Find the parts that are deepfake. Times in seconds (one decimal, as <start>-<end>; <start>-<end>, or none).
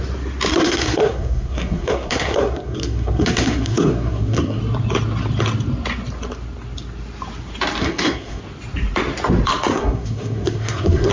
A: 0.5-4.6; 7.8-8.4; 9.7-11.1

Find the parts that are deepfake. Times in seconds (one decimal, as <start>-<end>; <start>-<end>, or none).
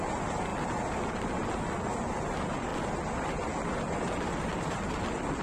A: none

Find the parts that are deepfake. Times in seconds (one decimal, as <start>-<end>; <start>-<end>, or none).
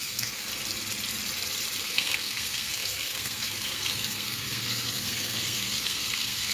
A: 0.0-0.5; 1.8-6.5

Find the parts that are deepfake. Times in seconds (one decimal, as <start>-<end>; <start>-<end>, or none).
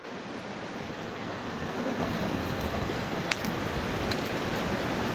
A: 0.9-3.6